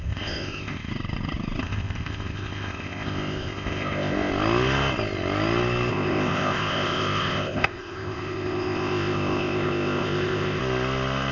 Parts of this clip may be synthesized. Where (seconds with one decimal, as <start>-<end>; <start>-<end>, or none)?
0.0-0.9; 1.6-4.3; 5.9-10.6